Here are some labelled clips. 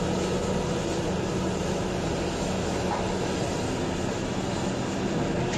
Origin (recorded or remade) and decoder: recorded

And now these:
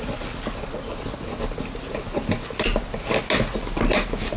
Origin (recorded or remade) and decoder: recorded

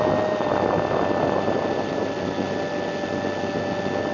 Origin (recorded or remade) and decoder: recorded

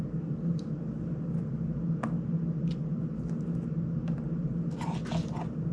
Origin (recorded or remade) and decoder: recorded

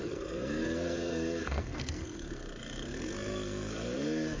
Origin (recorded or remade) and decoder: remade, codec, SNAC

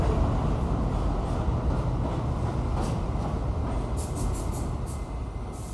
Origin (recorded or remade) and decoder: recorded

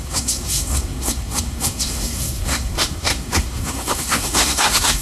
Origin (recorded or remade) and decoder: remade, codec, SNAC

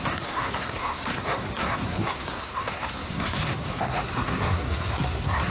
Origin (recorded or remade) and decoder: remade, codec, SNAC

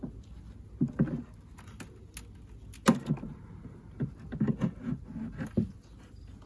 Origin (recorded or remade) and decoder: recorded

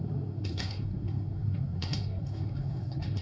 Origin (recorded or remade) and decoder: remade, codec, SNAC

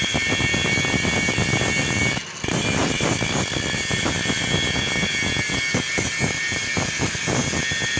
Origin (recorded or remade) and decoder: recorded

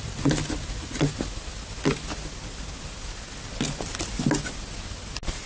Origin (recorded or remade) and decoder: recorded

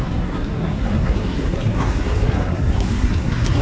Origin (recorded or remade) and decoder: remade, codec, SNAC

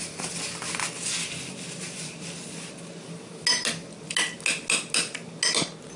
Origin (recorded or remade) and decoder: recorded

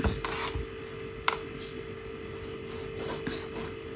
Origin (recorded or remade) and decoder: recorded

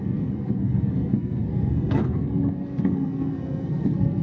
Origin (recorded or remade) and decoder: remade, codec, SNAC